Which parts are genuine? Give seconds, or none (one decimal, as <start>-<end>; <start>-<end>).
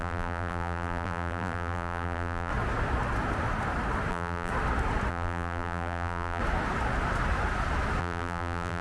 2.5-4.1; 4.5-5.1; 6.4-8.0